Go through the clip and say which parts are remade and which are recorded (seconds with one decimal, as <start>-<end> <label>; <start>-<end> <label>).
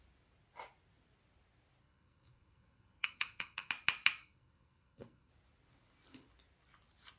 0.0-1.8 recorded; 1.8-3.7 remade; 3.7-4.2 recorded; 4.2-5.3 remade; 5.3-7.2 recorded